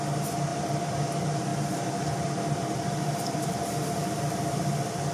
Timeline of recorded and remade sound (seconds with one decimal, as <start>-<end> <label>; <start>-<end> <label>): 0.0-5.1 recorded